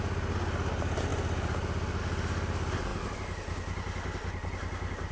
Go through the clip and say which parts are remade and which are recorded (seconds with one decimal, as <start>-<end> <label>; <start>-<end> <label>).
0.0-5.1 recorded